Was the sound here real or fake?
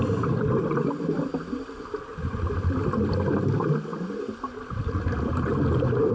real